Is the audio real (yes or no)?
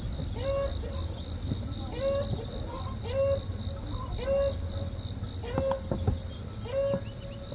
yes